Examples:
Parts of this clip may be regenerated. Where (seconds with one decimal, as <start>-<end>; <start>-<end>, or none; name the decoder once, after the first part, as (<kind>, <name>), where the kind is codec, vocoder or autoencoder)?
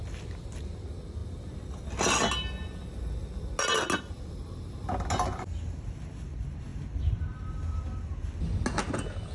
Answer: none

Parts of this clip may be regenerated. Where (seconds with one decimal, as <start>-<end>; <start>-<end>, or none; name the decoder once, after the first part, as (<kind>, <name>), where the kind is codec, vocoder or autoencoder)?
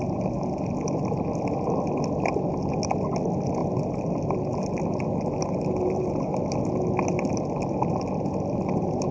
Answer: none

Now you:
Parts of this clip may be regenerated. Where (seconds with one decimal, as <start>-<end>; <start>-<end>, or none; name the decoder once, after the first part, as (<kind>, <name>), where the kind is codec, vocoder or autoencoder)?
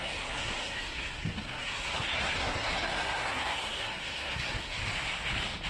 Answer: 0.0-4.8 (codec, SNAC)